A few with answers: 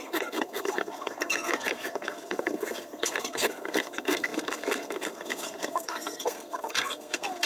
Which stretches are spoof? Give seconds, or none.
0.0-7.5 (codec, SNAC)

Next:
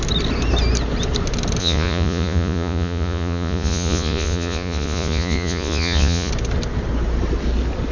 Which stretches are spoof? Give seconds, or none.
1.6-6.3 (vocoder, Vocos)

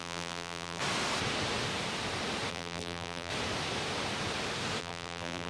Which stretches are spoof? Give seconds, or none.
0.0-0.8 (vocoder, BigVGAN v2); 2.5-3.3; 4.8-5.5

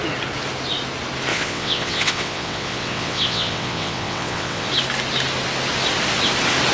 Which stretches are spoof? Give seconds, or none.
1.3-4.7 (vocoder, WaveNeXt)

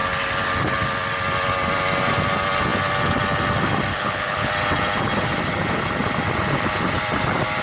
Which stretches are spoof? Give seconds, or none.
3.9-4.5 (codec, HILCodec)

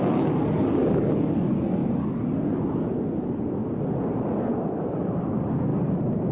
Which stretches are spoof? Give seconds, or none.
none

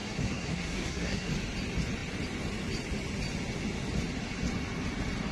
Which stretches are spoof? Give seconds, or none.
0.0-1.3 (codec, SNAC)

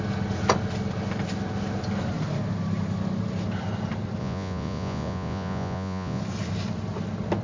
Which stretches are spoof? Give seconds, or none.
4.2-6.2 (vocoder, Vocos)